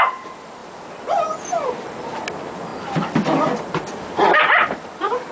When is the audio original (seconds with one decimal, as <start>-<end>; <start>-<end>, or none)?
0.0-5.3